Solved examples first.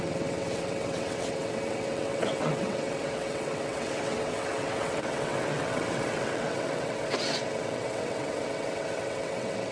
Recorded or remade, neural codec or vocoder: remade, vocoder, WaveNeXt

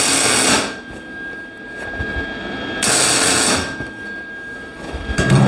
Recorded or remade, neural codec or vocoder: recorded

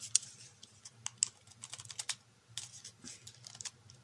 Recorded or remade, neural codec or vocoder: recorded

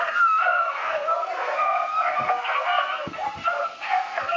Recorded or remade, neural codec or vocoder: remade, codec, SNAC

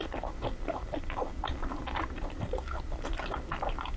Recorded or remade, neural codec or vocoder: recorded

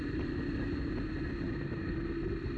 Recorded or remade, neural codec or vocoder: recorded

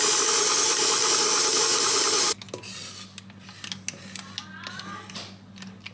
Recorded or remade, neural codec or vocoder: recorded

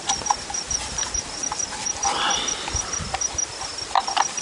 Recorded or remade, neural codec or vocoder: recorded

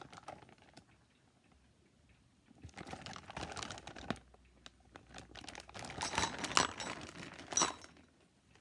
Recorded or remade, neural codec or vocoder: recorded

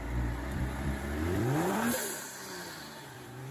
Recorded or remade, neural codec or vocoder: remade, vocoder, BigVGAN v2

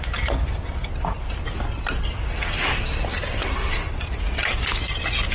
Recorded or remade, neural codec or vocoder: recorded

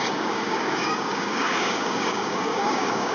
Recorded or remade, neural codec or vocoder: remade, codec, DAC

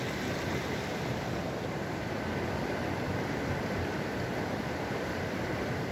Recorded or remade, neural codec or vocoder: recorded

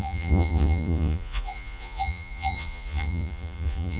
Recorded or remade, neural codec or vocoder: remade, vocoder, Vocos